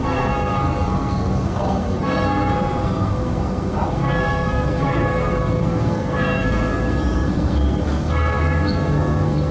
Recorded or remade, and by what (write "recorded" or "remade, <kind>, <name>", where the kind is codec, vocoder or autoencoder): remade, codec, SNAC